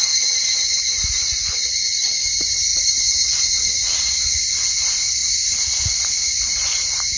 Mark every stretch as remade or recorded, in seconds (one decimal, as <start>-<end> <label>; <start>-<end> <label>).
0.0-7.2 recorded